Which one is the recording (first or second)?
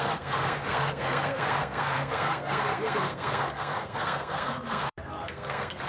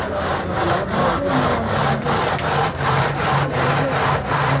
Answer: second